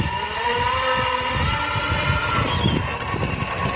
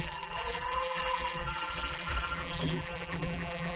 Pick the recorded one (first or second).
first